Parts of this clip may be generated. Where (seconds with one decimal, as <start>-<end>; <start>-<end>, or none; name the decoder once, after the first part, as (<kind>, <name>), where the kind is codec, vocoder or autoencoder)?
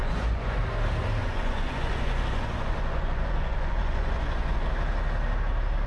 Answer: 0.0-0.6 (vocoder, Vocos); 1.2-4.7